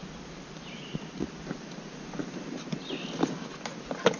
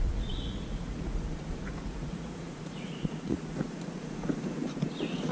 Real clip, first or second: first